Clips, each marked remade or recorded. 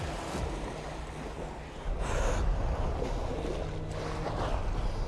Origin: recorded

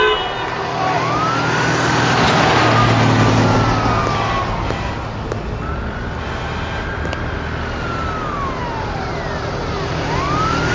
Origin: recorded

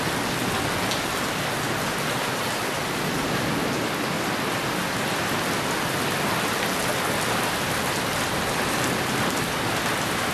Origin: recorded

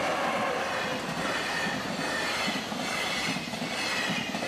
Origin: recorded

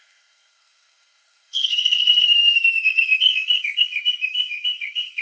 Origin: remade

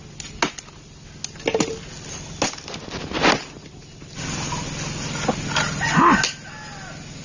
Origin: recorded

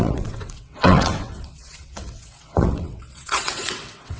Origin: remade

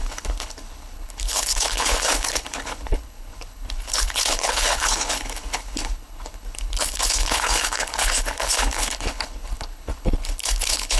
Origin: remade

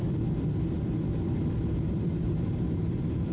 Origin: recorded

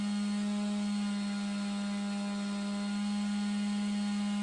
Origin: recorded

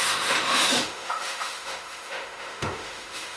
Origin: remade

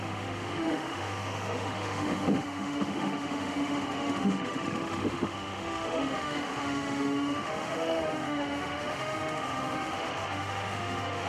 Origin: remade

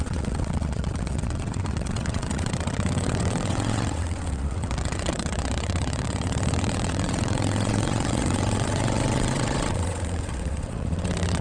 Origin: remade